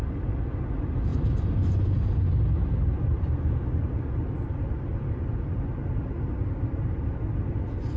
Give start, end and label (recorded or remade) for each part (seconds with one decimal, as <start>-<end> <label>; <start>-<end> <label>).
0.0-8.0 recorded